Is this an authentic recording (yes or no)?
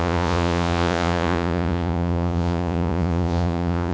no